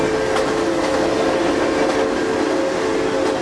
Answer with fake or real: real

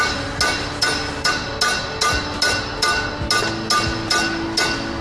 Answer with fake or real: real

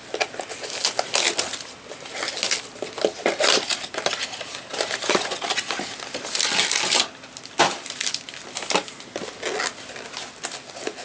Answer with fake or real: real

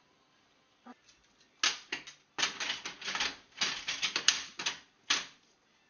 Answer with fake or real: real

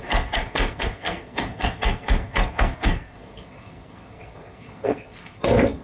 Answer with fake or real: fake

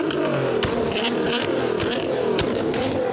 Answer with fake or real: real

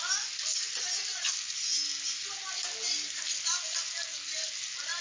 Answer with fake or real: real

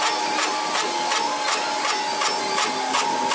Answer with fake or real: real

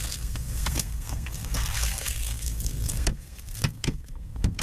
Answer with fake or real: fake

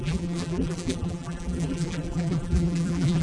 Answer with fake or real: fake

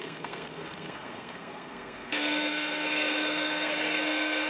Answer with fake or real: fake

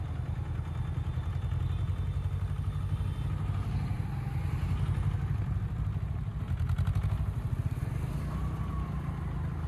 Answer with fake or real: real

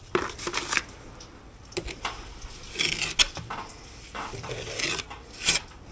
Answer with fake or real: real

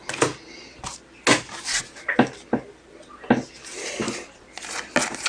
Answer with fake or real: real